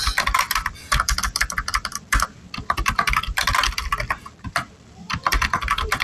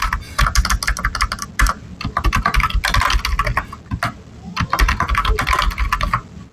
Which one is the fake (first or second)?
first